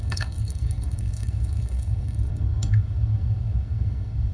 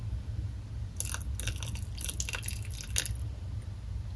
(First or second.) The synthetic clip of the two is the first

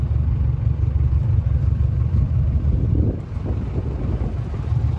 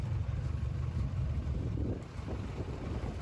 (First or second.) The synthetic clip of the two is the second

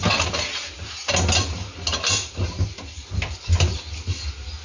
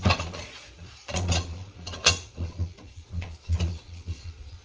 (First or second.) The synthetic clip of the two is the second